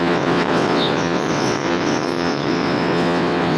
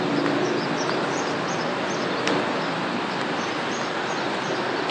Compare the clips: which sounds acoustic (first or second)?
second